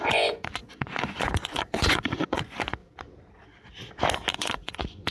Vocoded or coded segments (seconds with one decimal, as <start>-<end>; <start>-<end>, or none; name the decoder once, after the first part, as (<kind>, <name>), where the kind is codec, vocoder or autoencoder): 0.0-2.8 (vocoder, Vocos); 4.3-5.1